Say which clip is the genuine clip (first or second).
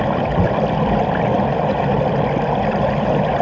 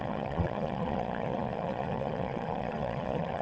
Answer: first